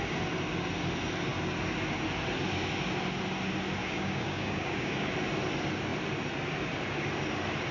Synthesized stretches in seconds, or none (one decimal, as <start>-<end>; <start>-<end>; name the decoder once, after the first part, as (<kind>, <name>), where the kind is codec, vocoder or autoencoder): 3.8-5.1 (codec, DAC)